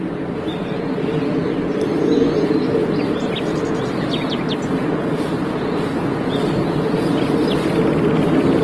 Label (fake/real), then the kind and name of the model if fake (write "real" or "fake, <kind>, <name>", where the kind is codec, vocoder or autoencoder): real